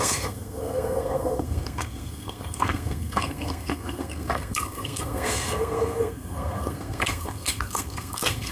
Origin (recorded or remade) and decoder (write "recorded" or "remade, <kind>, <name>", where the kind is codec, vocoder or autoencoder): remade, codec, SNAC